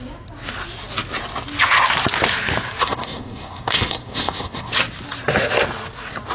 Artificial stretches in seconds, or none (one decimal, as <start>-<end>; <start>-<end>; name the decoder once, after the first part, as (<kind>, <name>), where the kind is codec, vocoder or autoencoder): 2.8-4.7 (codec, SNAC)